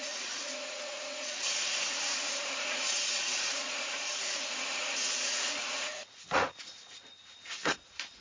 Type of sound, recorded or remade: remade